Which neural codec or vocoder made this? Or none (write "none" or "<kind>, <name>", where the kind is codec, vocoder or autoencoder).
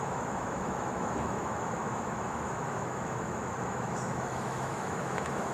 autoencoder, DAC-VAE